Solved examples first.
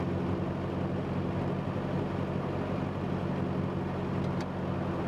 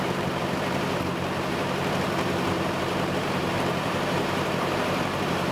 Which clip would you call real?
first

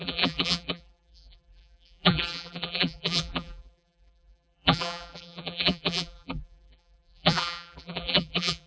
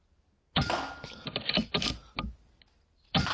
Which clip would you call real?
second